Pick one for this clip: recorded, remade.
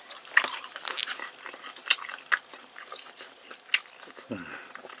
recorded